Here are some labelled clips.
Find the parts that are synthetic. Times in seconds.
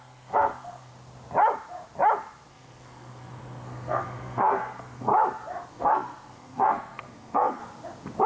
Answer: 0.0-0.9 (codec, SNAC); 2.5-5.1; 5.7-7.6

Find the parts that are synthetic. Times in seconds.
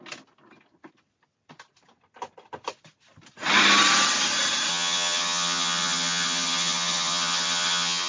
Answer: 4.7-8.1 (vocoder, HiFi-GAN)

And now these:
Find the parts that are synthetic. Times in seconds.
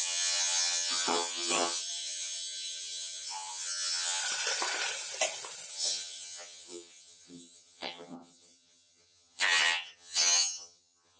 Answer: 0.0-4.2 (vocoder, HiFi-GAN); 5.7-11.2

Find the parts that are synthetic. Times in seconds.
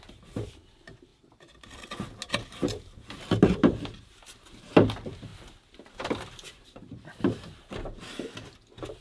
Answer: none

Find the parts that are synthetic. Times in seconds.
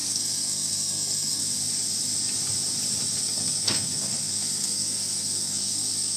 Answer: 0.0-1.4 (codec, SNAC); 3.2-6.2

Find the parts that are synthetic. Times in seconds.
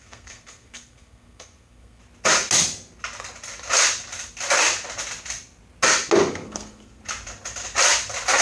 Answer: 0.0-2.0 (codec, SNAC); 6.3-7.0